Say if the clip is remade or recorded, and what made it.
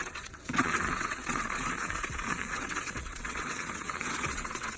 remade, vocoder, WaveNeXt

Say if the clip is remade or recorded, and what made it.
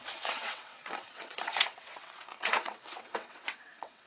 remade, vocoder, WaveNeXt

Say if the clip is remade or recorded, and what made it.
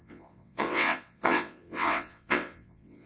remade, vocoder, WaveNeXt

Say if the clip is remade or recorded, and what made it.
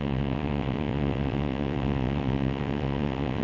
remade, vocoder, WaveNeXt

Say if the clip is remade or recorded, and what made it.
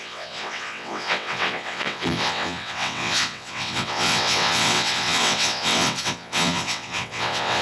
remade, vocoder, WaveNeXt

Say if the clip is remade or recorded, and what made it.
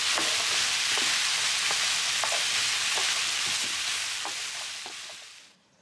recorded